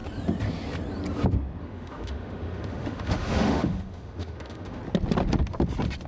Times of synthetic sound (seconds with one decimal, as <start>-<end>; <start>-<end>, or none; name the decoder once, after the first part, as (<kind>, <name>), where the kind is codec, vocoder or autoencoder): 1.6-4.8 (autoencoder, DAC-VAE)